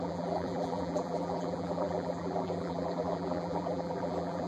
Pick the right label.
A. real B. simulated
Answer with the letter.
B